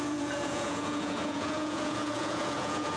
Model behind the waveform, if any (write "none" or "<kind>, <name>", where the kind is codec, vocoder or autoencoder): vocoder, Vocos